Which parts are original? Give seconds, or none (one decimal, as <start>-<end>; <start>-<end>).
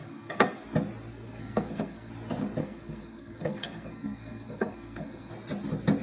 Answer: 0.6-1.1; 2.1-2.6; 5.3-6.0